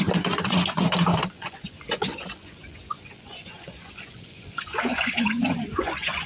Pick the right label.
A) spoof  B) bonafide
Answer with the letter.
A